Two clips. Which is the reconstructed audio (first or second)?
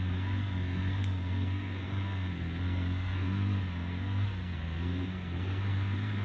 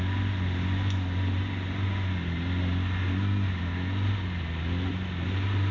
first